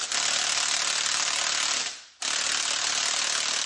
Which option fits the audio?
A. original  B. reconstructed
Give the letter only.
A